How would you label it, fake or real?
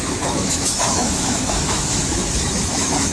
fake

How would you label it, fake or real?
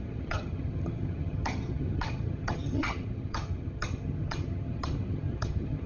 fake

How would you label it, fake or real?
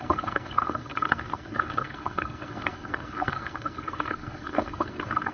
fake